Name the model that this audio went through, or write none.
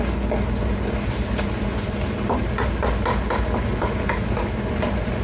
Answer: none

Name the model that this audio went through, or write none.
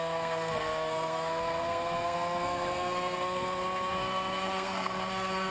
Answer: codec, SNAC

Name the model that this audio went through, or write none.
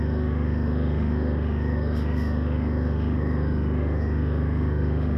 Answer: autoencoder, DAC-VAE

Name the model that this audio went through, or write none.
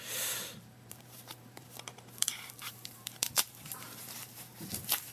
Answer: vocoder, BigVGAN v2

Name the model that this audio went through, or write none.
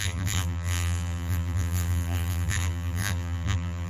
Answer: vocoder, BigVGAN v2